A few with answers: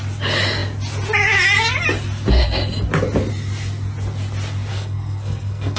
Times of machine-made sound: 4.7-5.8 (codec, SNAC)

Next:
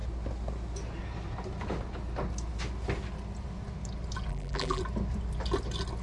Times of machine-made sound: 4.3-4.8 (vocoder, BigVGAN v2)

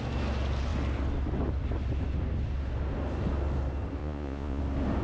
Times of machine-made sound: 4.0-4.6 (vocoder, Vocos)

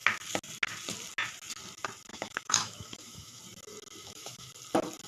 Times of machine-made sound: 2.1-3.4 (autoencoder, DAC-VAE); 4.0-4.5